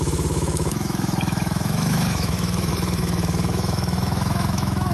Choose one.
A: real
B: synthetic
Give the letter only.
B